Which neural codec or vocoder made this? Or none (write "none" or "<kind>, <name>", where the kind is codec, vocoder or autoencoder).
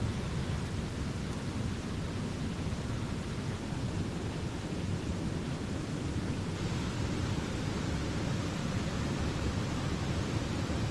none